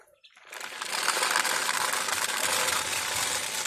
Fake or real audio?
real